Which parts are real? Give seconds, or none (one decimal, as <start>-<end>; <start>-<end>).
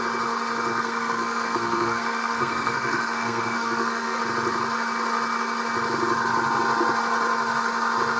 0.0-0.7; 4.2-8.2